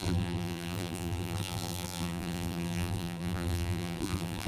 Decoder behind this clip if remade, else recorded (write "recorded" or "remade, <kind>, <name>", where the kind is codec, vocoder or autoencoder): remade, vocoder, BigVGAN v2